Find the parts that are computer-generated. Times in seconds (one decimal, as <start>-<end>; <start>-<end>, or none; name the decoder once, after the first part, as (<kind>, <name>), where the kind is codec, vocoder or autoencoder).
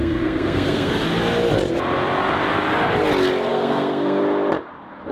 0.0-0.9 (codec, SNAC); 3.5-4.2